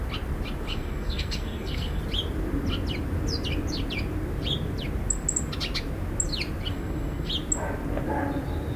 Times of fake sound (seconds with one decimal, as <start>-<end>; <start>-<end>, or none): 0.7-2.0; 6.7-7.3